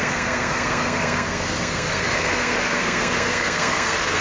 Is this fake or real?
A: fake